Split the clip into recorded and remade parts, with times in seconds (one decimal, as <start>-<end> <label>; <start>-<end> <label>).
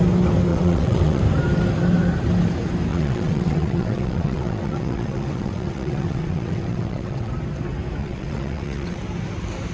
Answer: 0.0-0.5 recorded; 0.5-1.2 remade; 1.2-2.9 recorded; 2.9-7.3 remade; 7.3-8.0 recorded; 8.0-9.0 remade; 9.0-9.7 recorded